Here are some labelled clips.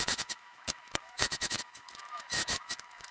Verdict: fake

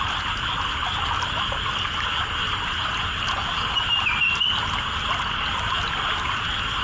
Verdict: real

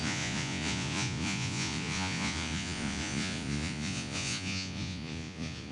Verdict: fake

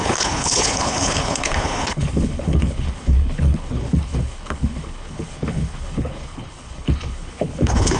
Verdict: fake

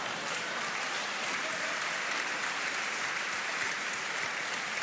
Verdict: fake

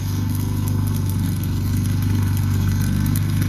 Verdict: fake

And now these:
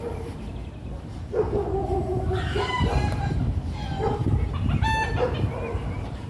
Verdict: fake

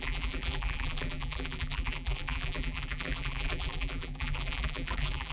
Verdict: fake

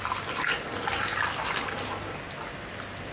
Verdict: real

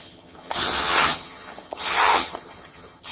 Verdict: fake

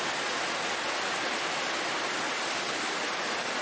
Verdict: real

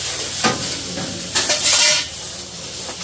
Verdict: real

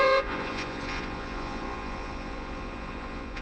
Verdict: fake